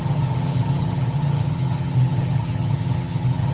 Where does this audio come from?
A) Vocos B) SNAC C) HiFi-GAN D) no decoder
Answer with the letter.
C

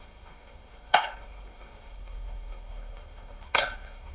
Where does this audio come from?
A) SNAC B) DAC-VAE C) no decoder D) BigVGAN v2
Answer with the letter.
A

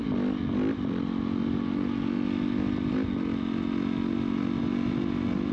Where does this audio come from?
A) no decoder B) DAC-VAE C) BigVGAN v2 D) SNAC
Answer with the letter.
A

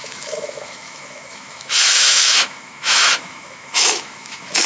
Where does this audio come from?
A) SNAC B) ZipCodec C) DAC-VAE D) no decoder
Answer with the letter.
C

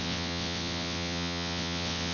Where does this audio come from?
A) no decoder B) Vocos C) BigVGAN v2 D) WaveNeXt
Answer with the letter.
D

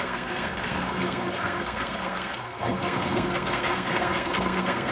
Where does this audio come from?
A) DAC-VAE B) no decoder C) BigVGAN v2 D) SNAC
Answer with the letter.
D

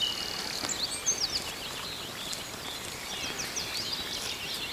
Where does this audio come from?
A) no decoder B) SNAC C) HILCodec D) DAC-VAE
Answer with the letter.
A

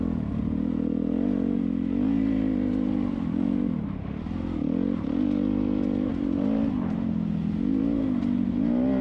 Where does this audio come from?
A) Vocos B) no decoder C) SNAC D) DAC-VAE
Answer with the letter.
B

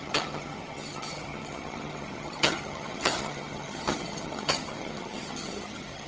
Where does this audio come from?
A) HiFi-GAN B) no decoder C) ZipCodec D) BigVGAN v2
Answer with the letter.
A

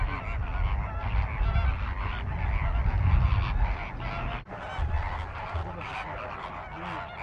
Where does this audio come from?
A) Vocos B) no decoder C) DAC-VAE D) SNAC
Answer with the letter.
B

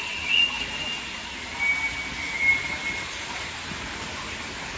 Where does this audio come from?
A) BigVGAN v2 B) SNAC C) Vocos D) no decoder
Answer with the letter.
D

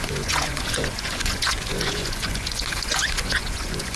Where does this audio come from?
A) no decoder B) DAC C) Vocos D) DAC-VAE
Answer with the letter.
C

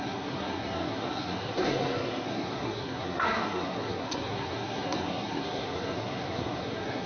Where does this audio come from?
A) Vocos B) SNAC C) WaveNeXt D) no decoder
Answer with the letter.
B